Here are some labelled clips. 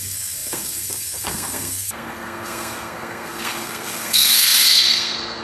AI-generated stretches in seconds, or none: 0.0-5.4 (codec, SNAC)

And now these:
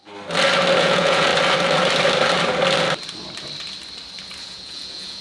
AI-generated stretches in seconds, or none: 0.8-1.3 (vocoder, Vocos); 4.4-5.2

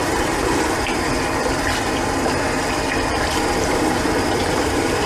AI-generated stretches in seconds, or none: 0.0-0.9 (vocoder, BigVGAN v2); 3.2-5.1

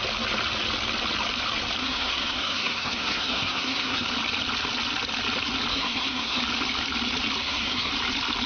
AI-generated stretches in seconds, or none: 1.8-4.1 (codec, SNAC); 5.7-6.4; 7.4-7.9